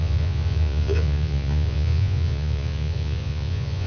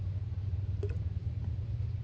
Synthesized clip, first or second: first